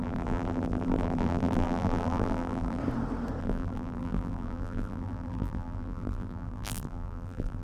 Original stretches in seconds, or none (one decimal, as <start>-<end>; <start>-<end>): 2.8-3.4